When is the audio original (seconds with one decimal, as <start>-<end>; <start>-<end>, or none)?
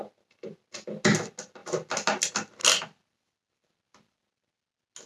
0.0-5.1